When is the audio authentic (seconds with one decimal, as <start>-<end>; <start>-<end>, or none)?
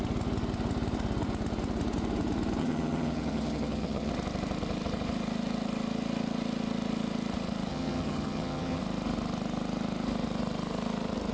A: 0.0-2.6; 4.1-7.7; 8.8-11.3